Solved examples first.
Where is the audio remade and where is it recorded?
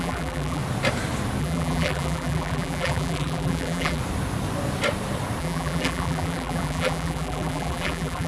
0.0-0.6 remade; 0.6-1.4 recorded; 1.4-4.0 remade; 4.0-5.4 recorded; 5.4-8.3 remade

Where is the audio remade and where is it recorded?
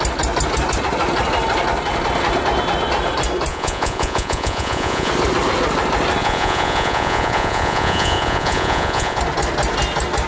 0.0-3.5 recorded; 3.5-5.1 remade; 5.1-6.2 recorded; 6.2-9.2 remade; 9.2-10.3 recorded